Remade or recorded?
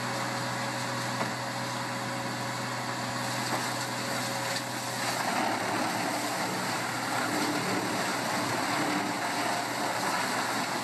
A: recorded